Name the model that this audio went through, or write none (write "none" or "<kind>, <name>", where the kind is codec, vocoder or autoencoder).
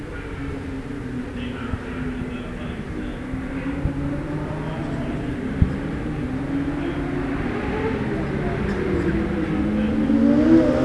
none